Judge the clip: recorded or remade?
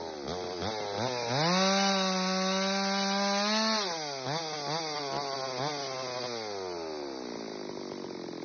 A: recorded